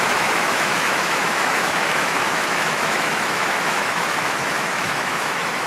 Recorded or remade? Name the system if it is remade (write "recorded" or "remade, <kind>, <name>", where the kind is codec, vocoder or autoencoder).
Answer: remade, autoencoder, DAC-VAE